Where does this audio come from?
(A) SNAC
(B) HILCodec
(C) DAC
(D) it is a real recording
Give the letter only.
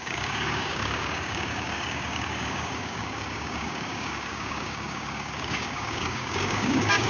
C